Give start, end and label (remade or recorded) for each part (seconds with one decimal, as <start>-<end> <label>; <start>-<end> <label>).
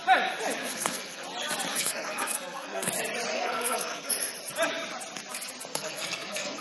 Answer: 0.0-0.6 recorded; 0.6-1.2 remade; 1.2-1.7 recorded; 1.7-2.9 remade; 2.9-3.3 recorded; 3.3-4.1 remade; 4.1-5.7 recorded; 5.7-6.6 remade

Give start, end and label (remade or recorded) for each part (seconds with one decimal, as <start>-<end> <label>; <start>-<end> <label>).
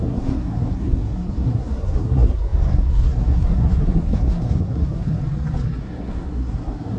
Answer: 0.0-5.2 remade; 5.2-5.8 recorded; 5.8-7.0 remade